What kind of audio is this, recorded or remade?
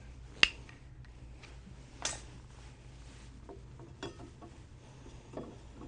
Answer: recorded